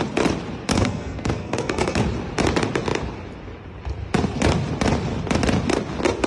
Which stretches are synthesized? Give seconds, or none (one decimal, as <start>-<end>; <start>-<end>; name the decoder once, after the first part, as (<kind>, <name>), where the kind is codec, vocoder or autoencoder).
0.7-2.0 (codec, SNAC)